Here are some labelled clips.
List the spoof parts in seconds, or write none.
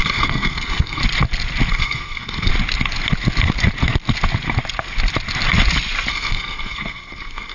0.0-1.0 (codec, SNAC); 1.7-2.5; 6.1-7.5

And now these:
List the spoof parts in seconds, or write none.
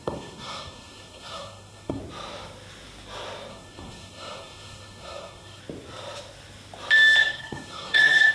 0.0-2.0 (codec, SNAC); 3.5-5.6; 7.2-8.3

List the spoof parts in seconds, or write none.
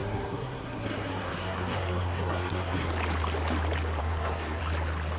0.0-2.9 (codec, SNAC); 4.0-4.6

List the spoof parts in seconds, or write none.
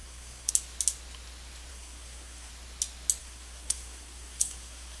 0.0-0.5 (codec, SNAC); 1.7-2.5; 3.2-5.0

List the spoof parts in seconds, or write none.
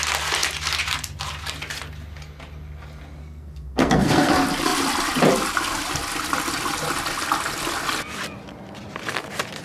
3.2-4.3 (codec, SNAC)